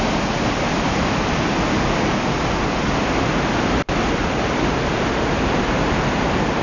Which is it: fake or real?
real